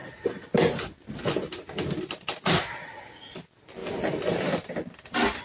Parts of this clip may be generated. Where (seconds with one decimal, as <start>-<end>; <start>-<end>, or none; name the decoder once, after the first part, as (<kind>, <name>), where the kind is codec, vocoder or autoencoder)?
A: none